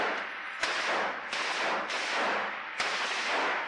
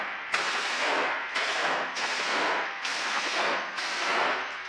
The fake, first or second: second